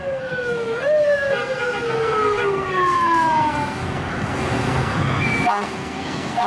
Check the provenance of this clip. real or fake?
fake